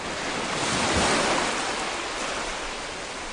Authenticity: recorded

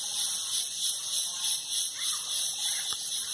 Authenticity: remade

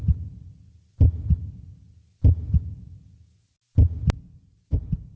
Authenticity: recorded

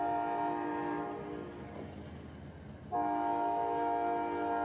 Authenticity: recorded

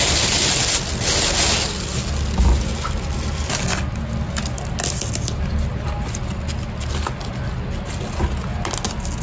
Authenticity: recorded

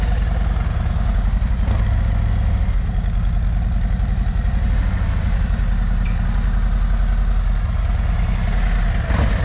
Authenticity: recorded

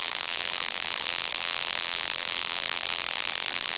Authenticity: remade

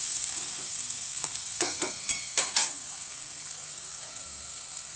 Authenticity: remade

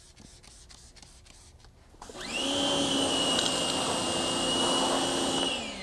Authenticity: recorded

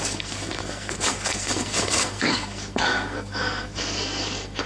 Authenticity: remade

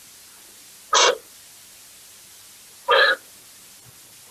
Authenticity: recorded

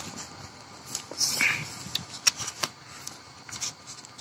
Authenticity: recorded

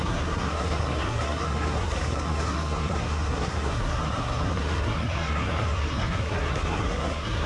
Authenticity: remade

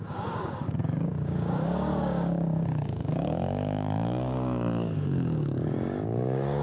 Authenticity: remade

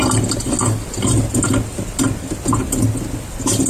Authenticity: recorded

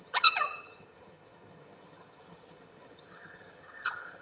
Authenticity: remade